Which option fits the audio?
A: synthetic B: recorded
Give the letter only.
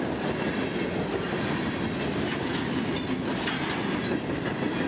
B